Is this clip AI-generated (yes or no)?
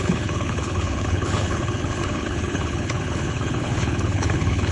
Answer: yes